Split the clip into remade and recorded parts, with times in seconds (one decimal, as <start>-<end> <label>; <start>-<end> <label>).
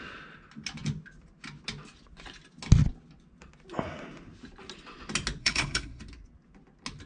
0.0-5.4 recorded; 5.4-6.0 remade; 6.0-7.1 recorded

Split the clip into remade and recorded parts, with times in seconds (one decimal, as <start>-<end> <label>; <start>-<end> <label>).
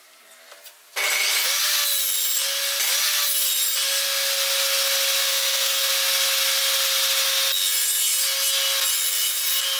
0.0-5.2 recorded; 5.2-5.9 remade; 5.9-9.8 recorded